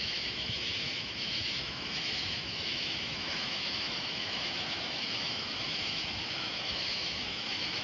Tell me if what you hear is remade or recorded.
remade